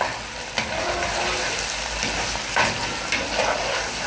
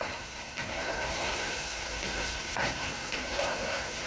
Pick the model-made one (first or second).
second